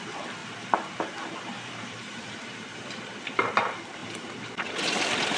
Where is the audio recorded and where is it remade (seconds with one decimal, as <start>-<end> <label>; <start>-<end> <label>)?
0.0-0.4 recorded; 0.4-3.6 remade; 3.6-4.0 recorded; 4.0-5.0 remade; 5.0-5.4 recorded